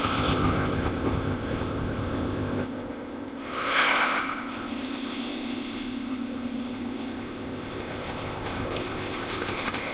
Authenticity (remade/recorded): remade